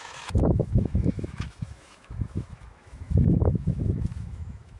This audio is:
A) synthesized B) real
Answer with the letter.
A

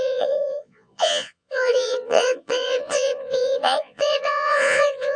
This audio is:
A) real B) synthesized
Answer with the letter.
B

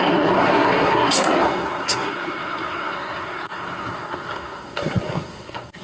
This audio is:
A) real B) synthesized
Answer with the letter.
B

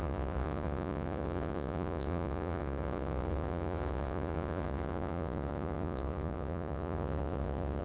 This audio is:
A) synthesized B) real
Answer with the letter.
A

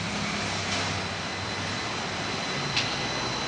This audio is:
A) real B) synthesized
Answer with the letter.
A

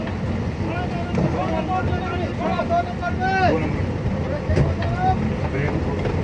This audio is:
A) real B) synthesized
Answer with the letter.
A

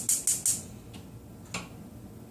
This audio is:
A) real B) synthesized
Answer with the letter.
A